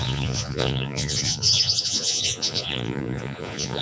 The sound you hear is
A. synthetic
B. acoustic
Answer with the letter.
A